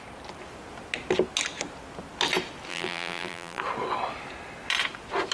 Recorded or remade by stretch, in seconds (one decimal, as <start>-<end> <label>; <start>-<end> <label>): 0.0-2.7 recorded; 2.7-3.6 remade; 3.6-5.3 recorded